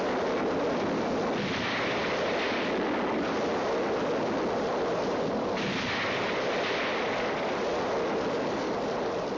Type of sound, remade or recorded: recorded